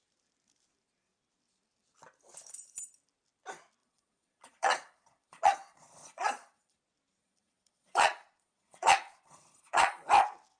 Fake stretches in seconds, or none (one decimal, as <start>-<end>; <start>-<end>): 3.8-6.8; 7.2-10.1